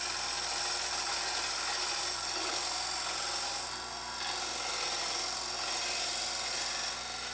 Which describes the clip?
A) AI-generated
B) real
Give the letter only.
B